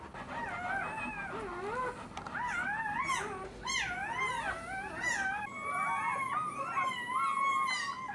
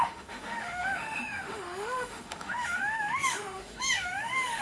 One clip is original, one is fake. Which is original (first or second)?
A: first